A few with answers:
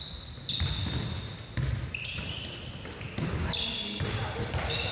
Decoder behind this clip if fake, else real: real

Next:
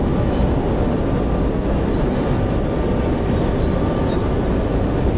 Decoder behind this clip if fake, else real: real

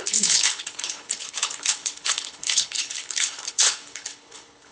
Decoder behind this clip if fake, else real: fake, codec, HILCodec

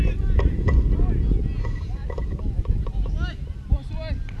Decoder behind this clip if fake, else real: real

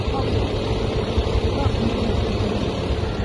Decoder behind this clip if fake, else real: real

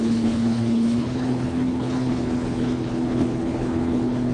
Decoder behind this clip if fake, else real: fake, codec, HILCodec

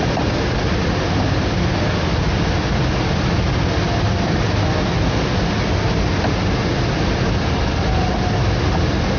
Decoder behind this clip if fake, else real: real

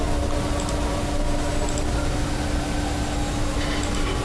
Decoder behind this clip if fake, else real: real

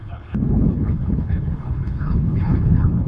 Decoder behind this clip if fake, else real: fake, codec, HILCodec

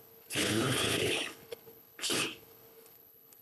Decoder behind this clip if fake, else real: fake, codec, HILCodec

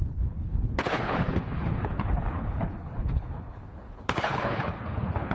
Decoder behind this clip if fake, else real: fake, codec, HILCodec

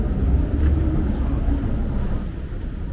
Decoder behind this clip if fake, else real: real